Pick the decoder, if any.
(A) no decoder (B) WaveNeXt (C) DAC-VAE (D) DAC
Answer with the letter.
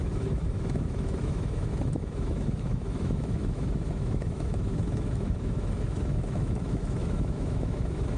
C